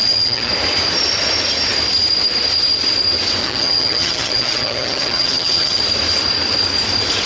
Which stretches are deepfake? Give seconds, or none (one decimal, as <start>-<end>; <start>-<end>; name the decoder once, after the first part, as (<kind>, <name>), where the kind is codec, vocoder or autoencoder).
0.0-0.5 (vocoder, HiFi-GAN); 3.4-5.8